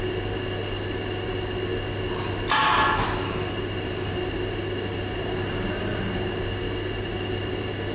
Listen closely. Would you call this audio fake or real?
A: real